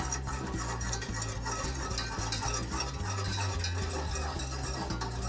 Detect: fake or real real